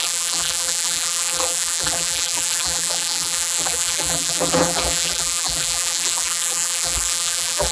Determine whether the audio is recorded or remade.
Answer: remade